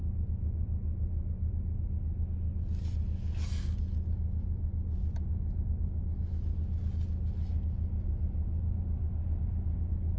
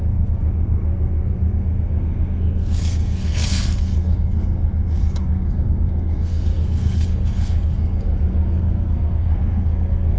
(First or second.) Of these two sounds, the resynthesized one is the second